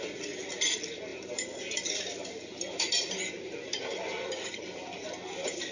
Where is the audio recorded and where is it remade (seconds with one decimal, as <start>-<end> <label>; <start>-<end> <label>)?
0.0-5.7 recorded